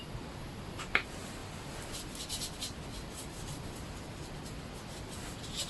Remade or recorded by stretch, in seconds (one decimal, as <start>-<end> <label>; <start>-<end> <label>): 0.0-5.7 recorded